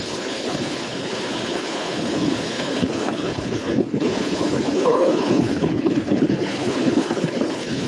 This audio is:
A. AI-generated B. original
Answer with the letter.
A